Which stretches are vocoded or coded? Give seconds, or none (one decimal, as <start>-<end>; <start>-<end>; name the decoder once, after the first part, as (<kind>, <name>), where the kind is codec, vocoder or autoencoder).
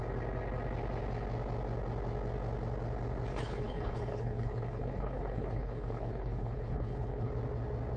3.3-7.3 (codec, HILCodec)